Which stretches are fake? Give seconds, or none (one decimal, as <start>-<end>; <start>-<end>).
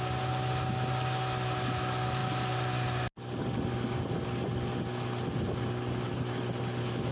none